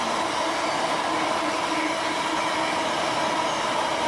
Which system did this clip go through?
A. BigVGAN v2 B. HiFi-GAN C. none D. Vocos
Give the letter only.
C